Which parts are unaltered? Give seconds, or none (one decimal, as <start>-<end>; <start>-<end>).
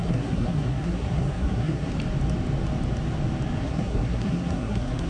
1.9-3.6